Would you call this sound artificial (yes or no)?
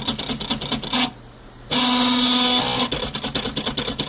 no